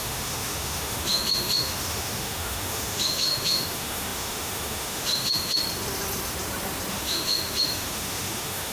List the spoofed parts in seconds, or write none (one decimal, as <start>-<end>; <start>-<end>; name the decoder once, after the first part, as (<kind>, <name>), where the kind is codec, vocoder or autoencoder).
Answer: 0.0-5.6 (autoencoder, DAC-VAE); 6.9-8.7